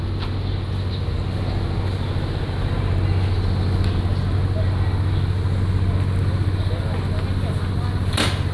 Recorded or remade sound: recorded